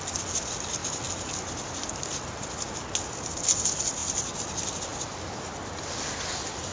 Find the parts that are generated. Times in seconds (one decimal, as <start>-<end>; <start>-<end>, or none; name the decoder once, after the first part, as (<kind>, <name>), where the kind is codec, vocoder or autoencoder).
none